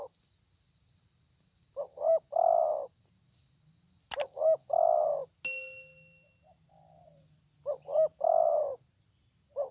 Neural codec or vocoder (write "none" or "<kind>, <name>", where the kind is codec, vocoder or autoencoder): none